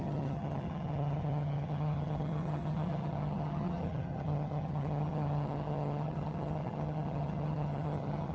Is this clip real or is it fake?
fake